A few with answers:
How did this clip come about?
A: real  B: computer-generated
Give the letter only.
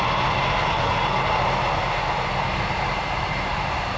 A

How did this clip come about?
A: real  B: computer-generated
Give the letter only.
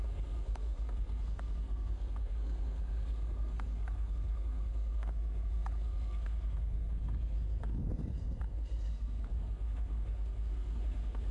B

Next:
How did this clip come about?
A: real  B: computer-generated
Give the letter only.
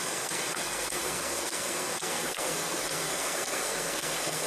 B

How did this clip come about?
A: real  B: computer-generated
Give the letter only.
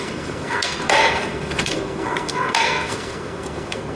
B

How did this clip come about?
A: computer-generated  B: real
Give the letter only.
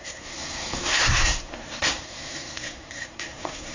A